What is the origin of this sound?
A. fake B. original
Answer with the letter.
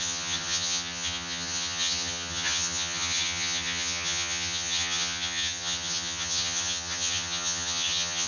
A